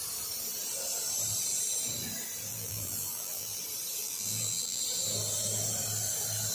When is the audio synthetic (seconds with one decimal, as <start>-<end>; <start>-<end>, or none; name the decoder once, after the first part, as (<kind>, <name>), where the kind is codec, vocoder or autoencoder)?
2.5-3.6 (vocoder, BigVGAN v2); 4.0-4.8

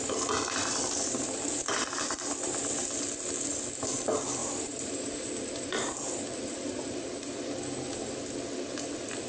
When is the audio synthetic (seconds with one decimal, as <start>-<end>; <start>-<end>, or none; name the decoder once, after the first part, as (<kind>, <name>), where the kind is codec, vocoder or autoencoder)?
4.4-5.3 (vocoder, BigVGAN v2)

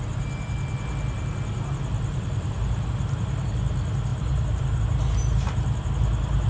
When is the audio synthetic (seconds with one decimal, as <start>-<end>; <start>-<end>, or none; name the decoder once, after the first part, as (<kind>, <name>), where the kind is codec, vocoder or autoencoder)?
4.1-4.8 (vocoder, BigVGAN v2)

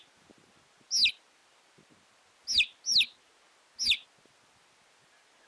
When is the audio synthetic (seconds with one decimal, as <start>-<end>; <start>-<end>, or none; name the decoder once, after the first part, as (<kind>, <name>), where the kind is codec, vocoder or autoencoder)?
none

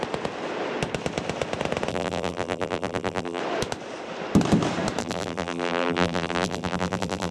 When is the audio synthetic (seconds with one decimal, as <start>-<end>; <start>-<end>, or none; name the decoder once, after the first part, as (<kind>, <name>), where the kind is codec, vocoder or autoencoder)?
1.9-3.4 (vocoder, BigVGAN v2); 5.0-7.3